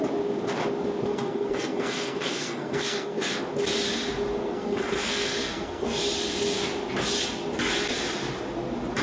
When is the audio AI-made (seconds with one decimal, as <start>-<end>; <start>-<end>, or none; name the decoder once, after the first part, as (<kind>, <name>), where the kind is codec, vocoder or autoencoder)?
1.1-3.3 (codec, SNAC); 4.4-6.0